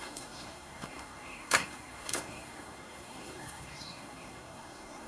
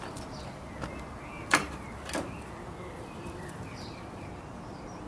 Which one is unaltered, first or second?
second